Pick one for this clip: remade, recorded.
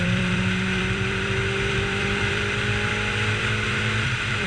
remade